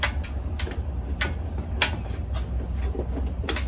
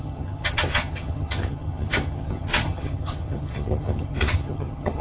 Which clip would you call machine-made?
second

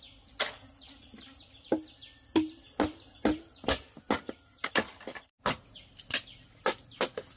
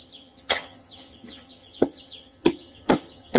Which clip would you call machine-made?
second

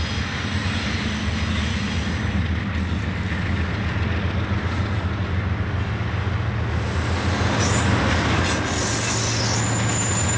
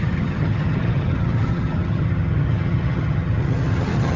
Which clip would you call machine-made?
second